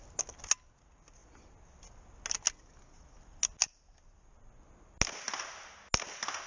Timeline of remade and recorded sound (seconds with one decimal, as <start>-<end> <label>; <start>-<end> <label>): 0.0-6.5 recorded